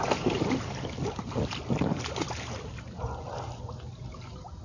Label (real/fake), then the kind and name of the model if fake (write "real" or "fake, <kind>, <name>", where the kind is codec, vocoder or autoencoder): real